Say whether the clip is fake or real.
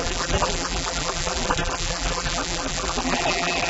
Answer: fake